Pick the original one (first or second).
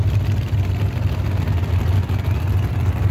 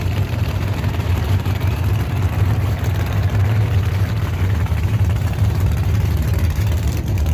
first